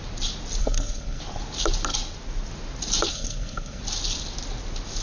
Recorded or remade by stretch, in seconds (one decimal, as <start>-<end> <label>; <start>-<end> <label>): 0.0-0.6 recorded; 0.6-1.2 remade; 1.2-3.1 recorded; 3.1-3.8 remade; 3.8-5.0 recorded